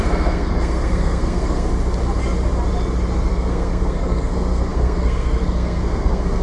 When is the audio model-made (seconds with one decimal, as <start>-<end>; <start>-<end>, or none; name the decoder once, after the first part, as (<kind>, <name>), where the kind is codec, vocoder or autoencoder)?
0.0-1.7 (codec, SNAC); 3.3-6.4